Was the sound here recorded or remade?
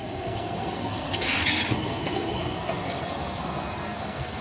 remade